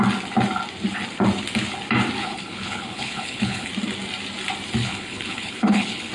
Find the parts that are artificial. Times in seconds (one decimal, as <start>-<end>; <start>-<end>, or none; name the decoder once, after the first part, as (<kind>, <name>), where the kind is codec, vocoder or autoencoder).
2.2-3.7 (codec, HILCodec); 4.8-6.1